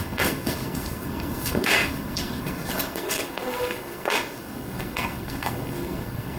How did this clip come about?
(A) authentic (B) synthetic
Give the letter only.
B